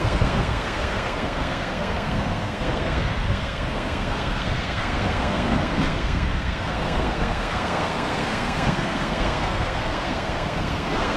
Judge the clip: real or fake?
fake